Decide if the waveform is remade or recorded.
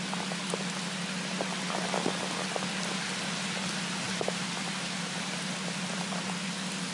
recorded